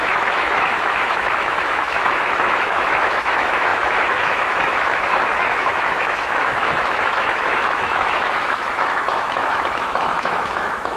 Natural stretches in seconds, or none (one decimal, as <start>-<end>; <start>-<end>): none